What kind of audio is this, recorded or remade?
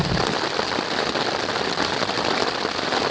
recorded